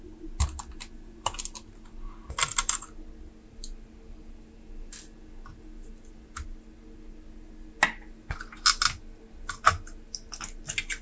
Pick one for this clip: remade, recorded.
recorded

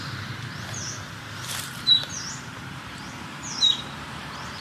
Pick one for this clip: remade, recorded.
remade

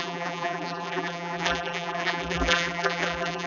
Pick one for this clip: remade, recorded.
remade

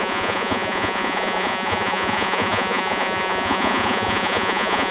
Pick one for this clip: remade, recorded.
remade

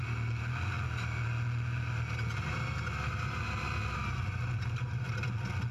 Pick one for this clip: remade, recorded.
recorded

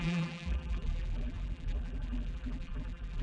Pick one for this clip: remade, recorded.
remade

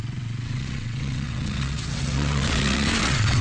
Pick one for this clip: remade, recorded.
remade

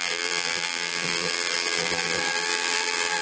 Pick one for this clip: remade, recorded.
remade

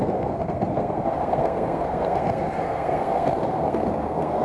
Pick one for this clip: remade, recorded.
remade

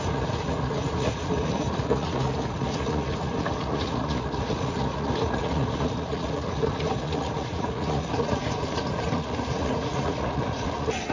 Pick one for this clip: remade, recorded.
remade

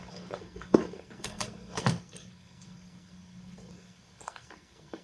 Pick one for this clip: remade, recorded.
remade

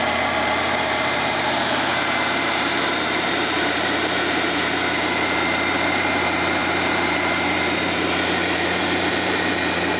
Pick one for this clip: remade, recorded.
remade